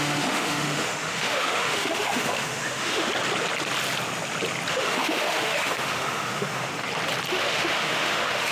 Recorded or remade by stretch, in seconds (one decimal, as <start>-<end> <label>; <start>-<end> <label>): 0.0-3.1 remade; 3.1-4.7 recorded; 4.7-6.7 remade; 6.7-7.3 recorded; 7.3-8.5 remade